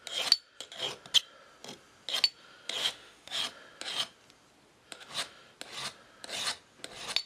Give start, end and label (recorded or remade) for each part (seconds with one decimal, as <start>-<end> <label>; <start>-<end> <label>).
0.0-2.8 recorded; 2.8-3.4 remade; 3.4-7.3 recorded